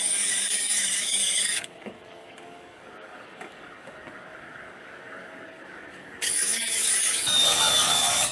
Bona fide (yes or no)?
no